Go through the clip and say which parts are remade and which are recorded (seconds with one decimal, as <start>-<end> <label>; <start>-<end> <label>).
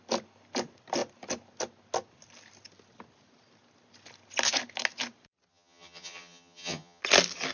0.0-5.5 recorded; 5.5-7.0 remade; 7.0-7.5 recorded